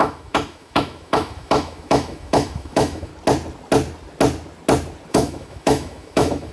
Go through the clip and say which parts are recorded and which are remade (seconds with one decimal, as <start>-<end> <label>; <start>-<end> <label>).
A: 0.0-3.1 remade; 3.1-5.1 recorded; 5.1-6.5 remade